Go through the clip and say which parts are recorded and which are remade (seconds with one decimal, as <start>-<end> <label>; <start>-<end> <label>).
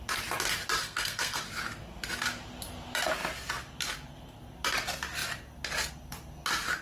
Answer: 0.0-0.8 recorded; 0.8-1.4 remade; 1.4-6.8 recorded